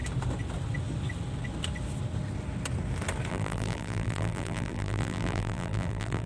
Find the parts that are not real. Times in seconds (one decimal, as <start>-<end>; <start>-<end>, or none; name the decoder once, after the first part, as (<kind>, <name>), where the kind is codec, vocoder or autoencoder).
3.3-6.3 (vocoder, BigVGAN v2)